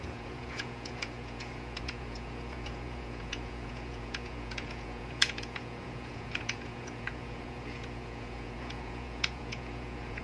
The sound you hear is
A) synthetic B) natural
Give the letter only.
A